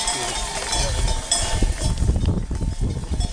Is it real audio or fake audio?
real